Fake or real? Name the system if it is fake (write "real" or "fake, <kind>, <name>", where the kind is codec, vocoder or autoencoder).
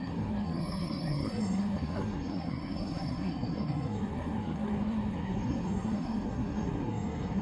fake, codec, SNAC